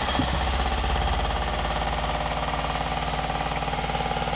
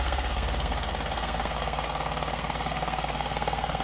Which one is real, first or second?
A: first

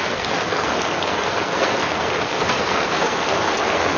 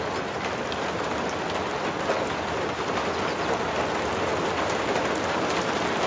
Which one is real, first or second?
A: second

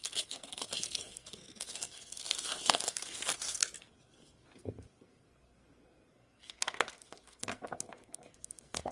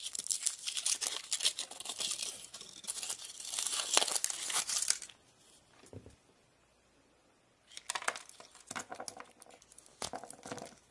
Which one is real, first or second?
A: second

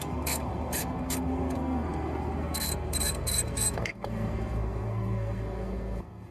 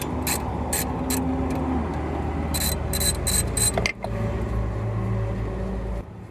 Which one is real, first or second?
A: second